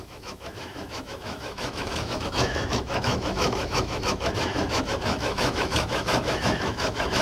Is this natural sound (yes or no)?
no